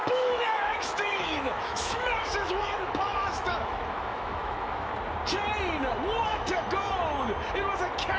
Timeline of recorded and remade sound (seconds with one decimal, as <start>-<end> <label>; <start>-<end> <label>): 0.0-4.9 remade; 4.9-6.3 recorded; 6.3-6.9 remade; 6.9-8.2 recorded